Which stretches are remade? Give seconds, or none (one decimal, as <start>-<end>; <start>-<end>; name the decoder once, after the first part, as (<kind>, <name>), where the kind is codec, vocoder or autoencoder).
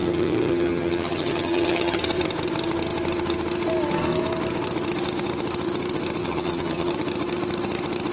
0.0-2.0 (vocoder, HiFi-GAN); 6.2-6.9